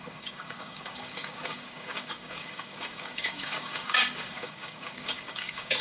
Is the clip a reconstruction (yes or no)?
yes